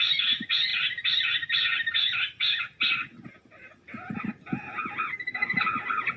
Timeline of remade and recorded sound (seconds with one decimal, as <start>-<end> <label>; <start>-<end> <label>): 0.0-6.2 recorded